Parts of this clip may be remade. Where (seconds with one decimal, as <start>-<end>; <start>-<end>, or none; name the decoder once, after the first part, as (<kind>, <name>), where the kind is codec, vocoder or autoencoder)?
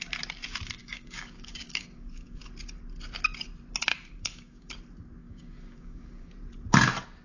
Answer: 0.8-2.4 (codec, DAC); 3.9-4.7; 5.2-6.3